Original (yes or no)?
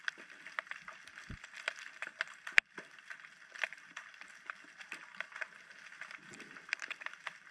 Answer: no